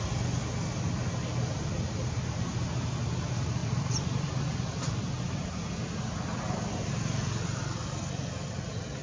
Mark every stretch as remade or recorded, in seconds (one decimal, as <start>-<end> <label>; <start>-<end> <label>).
0.0-9.0 recorded

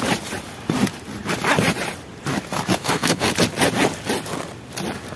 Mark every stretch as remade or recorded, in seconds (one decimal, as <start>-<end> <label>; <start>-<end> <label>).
0.0-2.8 recorded; 2.8-3.3 remade; 3.3-5.2 recorded

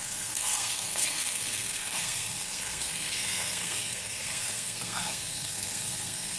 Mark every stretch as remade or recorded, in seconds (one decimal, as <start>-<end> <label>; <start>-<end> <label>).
0.0-6.4 remade

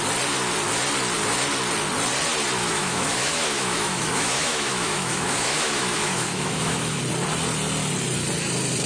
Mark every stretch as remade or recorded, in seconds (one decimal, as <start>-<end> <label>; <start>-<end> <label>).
0.0-2.6 recorded; 2.6-7.0 remade; 7.0-8.9 recorded